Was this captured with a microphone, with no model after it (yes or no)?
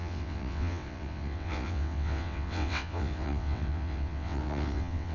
no